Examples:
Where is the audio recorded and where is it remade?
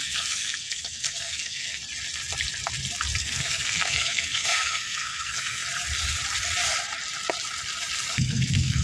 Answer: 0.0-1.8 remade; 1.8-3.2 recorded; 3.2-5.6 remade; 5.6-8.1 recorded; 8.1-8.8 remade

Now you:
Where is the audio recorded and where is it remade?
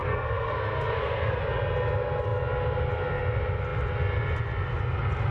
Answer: 0.0-1.4 remade; 1.4-5.3 recorded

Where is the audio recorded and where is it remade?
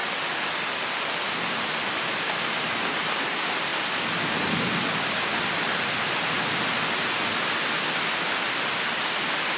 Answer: 0.0-9.6 recorded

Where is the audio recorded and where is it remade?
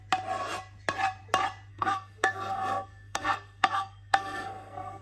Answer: 0.0-1.7 recorded; 1.7-5.0 remade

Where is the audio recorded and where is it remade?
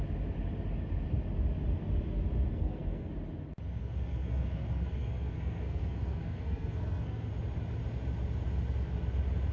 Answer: 0.0-2.5 recorded; 2.5-3.1 remade; 3.1-3.8 recorded; 3.8-7.3 remade; 7.3-9.5 recorded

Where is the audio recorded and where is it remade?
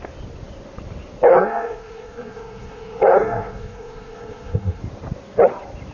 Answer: 0.0-1.3 recorded; 1.3-4.8 remade; 4.8-5.9 recorded